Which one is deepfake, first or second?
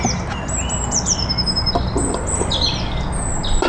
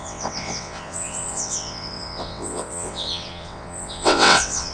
second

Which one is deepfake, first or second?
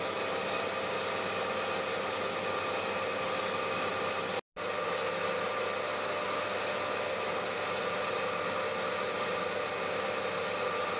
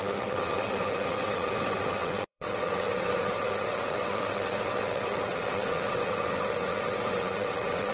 second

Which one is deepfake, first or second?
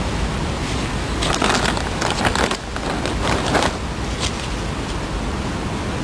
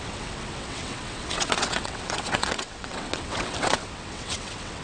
second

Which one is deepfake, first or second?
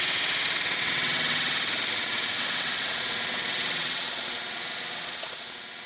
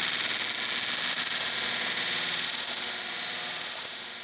first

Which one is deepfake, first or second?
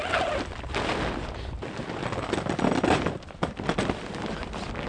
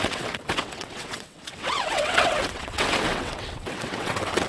second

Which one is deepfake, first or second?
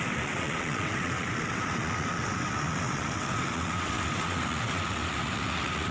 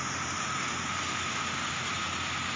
first